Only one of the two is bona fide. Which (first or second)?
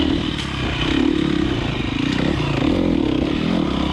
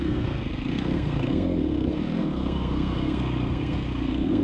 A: first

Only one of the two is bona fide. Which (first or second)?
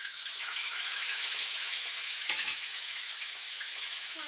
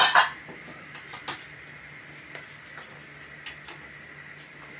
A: second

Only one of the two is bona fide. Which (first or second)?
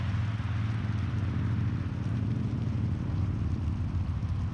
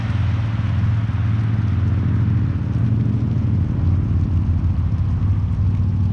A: second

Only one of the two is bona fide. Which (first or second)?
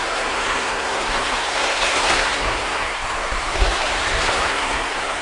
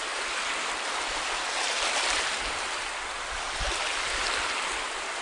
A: second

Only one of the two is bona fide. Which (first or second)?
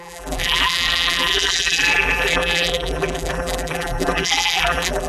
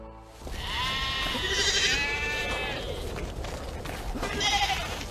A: second